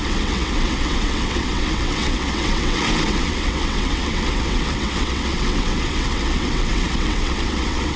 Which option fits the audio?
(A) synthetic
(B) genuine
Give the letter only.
A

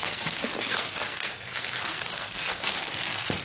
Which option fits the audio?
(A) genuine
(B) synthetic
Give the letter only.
B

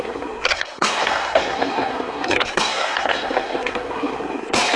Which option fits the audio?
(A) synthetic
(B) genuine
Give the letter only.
A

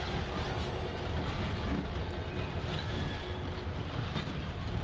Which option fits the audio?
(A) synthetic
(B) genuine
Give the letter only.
B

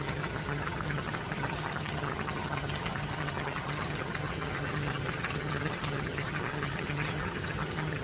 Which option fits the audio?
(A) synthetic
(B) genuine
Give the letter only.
A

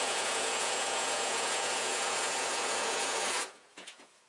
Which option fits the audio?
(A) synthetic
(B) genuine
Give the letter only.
A